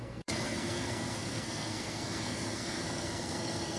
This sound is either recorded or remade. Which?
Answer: remade